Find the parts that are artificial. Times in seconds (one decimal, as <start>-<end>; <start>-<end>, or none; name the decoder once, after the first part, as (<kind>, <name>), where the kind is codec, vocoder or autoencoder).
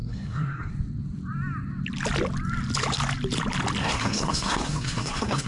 0.0-0.7 (codec, SNAC); 3.8-5.5